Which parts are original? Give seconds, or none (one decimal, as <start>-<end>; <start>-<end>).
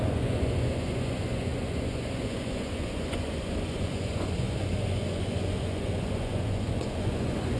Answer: none